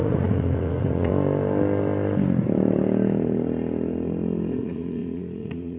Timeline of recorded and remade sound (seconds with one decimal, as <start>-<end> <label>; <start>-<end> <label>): 0.0-1.1 remade; 1.1-4.6 recorded; 4.6-5.8 remade